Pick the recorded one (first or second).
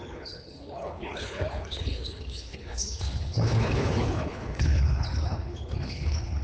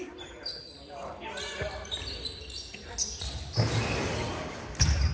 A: second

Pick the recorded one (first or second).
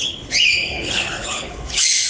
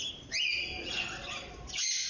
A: second